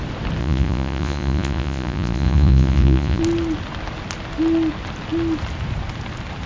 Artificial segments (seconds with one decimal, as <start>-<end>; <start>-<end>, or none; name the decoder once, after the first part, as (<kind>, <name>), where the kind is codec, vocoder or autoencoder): 0.4-3.2 (vocoder, Vocos)